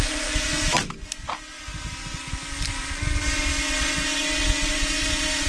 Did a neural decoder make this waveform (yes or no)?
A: no